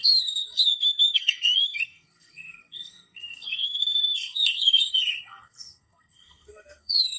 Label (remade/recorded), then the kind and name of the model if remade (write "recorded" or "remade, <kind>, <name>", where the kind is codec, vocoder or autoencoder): remade, codec, SNAC